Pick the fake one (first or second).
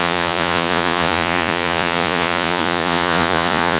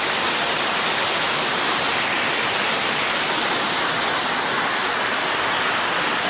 first